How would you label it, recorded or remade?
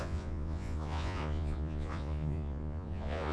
remade